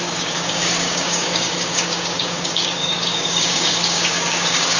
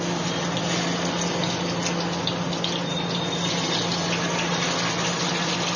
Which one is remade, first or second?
first